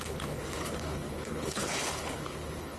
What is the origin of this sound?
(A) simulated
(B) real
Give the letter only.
A